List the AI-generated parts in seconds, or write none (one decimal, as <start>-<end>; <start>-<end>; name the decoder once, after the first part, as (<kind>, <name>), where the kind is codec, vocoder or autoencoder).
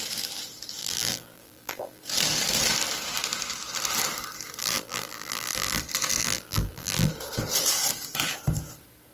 0.8-2.0 (vocoder, BigVGAN v2); 4.6-5.8; 6.2-7.1